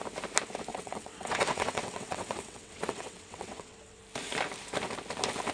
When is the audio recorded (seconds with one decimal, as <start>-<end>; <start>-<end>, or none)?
0.0-0.7; 4.0-5.5